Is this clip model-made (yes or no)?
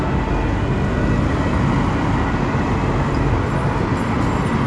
no